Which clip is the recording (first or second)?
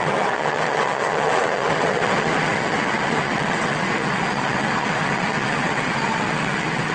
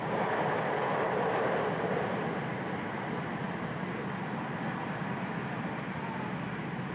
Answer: second